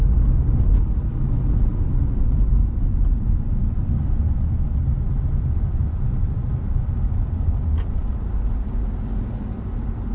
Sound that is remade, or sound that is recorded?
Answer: recorded